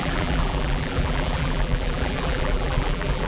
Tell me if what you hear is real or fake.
fake